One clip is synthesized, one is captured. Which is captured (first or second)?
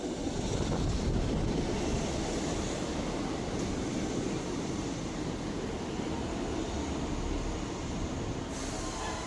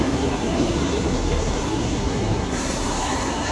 first